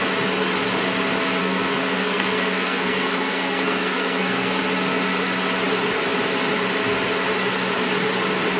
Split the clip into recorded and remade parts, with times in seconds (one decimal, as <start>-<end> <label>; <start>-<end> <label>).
0.0-1.4 recorded; 1.4-4.6 remade; 4.6-8.6 recorded